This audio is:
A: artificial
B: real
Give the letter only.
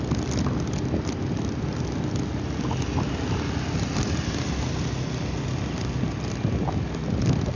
B